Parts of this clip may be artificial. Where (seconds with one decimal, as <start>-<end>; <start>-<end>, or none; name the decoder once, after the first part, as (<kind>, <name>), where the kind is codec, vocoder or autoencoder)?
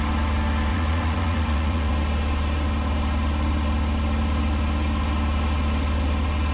0.7-1.9 (vocoder, Vocos)